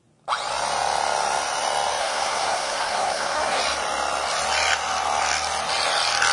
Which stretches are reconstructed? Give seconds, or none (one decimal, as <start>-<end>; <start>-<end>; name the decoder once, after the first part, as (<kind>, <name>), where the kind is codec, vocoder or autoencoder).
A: 2.0-3.6 (codec, SNAC)